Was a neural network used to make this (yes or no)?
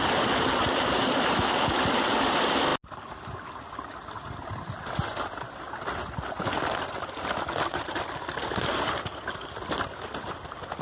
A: no